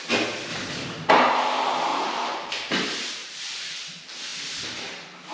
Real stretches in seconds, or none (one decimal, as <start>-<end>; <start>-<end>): 0.0-0.5; 1.1-1.9; 2.5-3.2; 3.8-5.3